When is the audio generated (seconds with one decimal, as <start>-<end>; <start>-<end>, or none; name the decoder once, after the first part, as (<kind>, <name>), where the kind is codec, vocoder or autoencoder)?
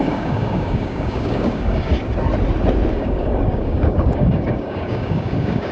0.0-1.9 (codec, DAC); 2.9-5.7